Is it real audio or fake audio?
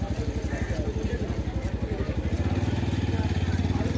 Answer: real